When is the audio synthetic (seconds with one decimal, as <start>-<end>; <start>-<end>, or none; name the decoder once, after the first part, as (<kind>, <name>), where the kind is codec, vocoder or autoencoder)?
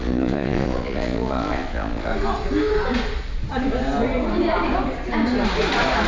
0.0-2.1 (vocoder, Vocos)